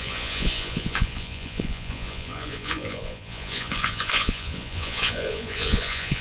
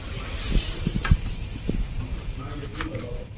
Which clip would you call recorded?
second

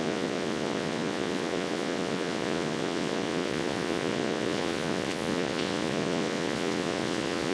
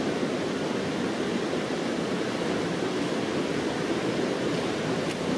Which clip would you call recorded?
second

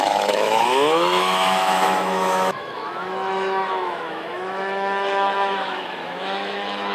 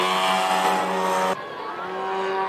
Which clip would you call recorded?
second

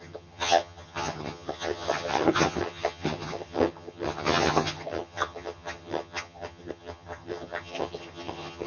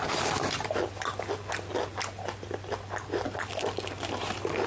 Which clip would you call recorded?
second